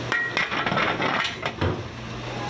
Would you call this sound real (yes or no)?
yes